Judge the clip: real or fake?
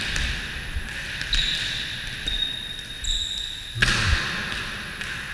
real